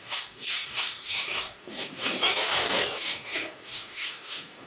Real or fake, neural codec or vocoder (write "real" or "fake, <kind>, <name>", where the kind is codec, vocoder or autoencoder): fake, codec, DAC